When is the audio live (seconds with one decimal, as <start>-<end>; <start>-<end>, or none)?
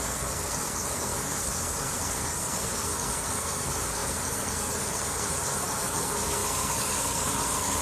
none